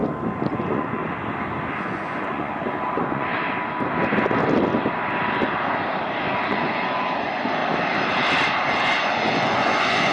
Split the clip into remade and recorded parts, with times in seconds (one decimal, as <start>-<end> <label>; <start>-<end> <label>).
0.0-0.5 recorded; 0.5-1.0 remade; 1.0-1.7 recorded; 1.7-3.3 remade; 3.3-6.5 recorded; 6.5-7.6 remade; 7.6-8.7 recorded; 8.7-10.1 remade